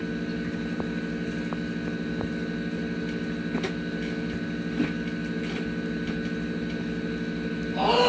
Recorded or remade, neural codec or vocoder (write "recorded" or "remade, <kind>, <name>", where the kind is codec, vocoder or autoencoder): recorded